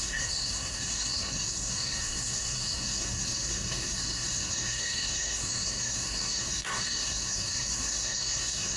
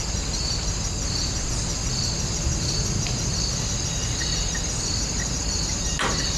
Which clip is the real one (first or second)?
second